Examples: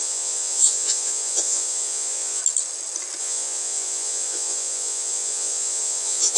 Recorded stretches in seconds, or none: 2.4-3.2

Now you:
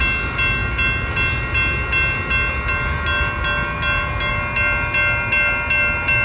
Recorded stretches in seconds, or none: 0.0-6.2

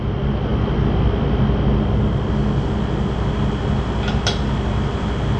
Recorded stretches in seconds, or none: 0.0-5.4

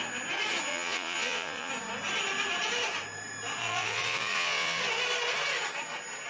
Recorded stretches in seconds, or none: 0.0-0.7; 1.7-3.6; 4.8-6.3

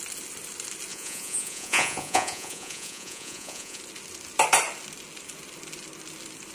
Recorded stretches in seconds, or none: 0.0-0.9; 3.8-6.5

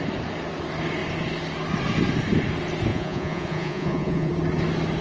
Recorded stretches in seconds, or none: 0.0-2.9; 4.3-5.0